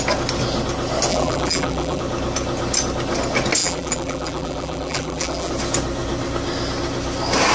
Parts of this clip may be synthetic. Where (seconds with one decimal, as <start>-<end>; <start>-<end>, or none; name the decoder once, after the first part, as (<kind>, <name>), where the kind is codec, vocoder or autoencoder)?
1.1-2.0 (vocoder, BigVGAN v2); 3.6-5.5